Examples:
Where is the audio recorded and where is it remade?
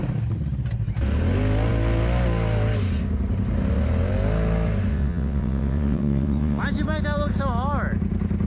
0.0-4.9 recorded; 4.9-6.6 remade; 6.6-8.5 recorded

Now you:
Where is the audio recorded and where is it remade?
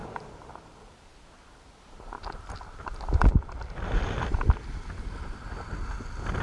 0.0-6.4 recorded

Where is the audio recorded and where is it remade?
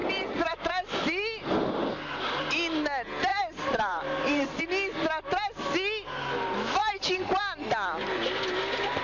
0.0-0.7 remade; 0.7-3.3 recorded; 3.3-4.6 remade; 4.6-6.8 recorded; 6.8-7.4 remade; 7.4-9.0 recorded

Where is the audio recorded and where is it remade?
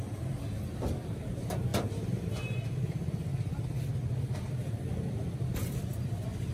0.0-1.7 remade; 1.7-2.7 recorded; 2.7-3.3 remade; 3.3-4.2 recorded; 4.2-6.5 remade